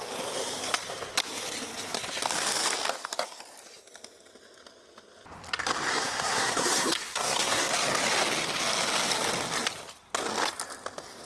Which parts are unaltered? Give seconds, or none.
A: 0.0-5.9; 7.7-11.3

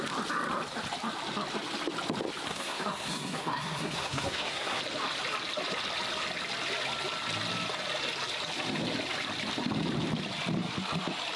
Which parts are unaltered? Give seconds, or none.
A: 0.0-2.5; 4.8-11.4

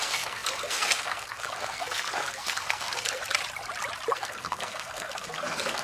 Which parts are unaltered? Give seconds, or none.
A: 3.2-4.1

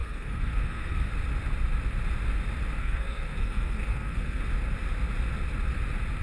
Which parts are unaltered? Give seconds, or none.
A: 1.1-2.8; 4.4-6.2

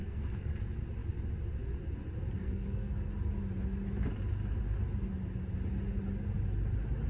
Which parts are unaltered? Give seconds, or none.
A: 0.5-2.4; 3.1-7.1

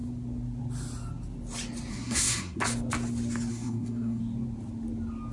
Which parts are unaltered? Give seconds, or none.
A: 0.0-1.9; 2.6-3.5; 4.2-5.3